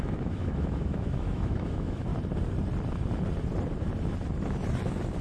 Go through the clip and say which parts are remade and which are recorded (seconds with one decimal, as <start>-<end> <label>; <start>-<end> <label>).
0.0-2.1 remade; 2.1-5.2 recorded